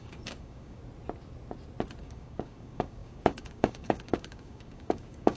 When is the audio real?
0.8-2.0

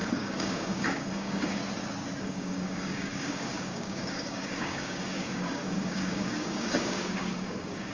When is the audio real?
1.6-2.2

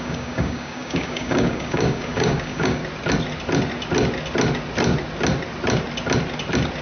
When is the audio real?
2.8-6.8

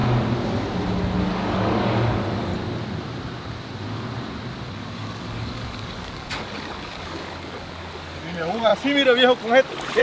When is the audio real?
0.0-1.2; 2.5-4.7; 8.7-10.0

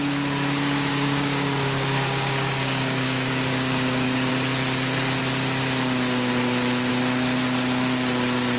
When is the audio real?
0.0-0.9; 4.3-8.6

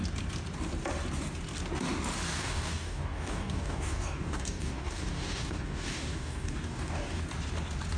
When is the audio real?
0.0-2.4; 7.2-8.0

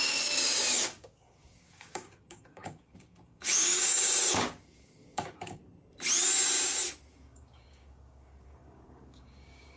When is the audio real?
5.6-7.1

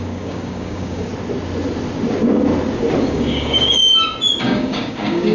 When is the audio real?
1.1-3.0; 3.8-4.4